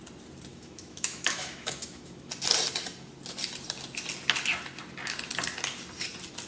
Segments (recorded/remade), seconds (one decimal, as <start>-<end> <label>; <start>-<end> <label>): 0.0-0.5 recorded; 0.5-2.3 remade; 2.3-6.5 recorded

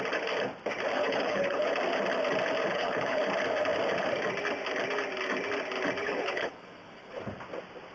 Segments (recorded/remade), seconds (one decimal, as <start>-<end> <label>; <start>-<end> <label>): 0.0-1.0 recorded; 1.0-1.6 remade; 1.6-2.7 recorded; 2.7-3.2 remade; 3.2-6.0 recorded; 6.0-7.2 remade; 7.2-7.9 recorded

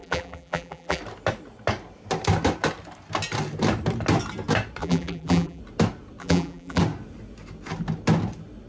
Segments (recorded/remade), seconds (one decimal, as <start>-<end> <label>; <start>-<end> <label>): 0.0-1.0 remade; 1.0-4.8 recorded; 4.8-5.6 remade; 5.6-6.2 recorded; 6.2-6.8 remade; 6.8-8.7 recorded

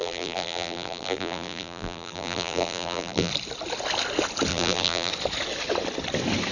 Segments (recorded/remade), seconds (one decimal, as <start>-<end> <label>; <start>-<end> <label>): 0.0-3.3 remade; 3.3-4.5 recorded; 4.5-5.1 remade; 5.1-6.5 recorded

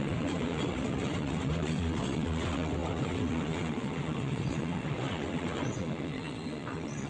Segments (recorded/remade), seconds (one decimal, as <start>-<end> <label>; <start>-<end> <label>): 0.0-7.1 remade

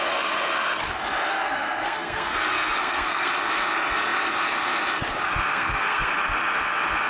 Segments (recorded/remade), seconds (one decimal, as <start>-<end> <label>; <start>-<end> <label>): 0.0-1.3 recorded; 1.3-3.3 remade; 3.3-5.5 recorded; 5.5-6.1 remade; 6.1-7.1 recorded

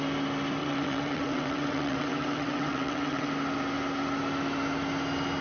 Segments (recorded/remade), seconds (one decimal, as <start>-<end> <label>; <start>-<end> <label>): 0.0-0.6 recorded; 0.6-3.3 remade; 3.3-5.4 recorded